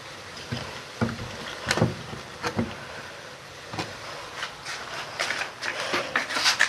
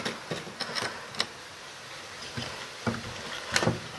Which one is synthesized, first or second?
first